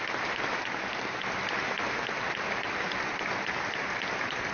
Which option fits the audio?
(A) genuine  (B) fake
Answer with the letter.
A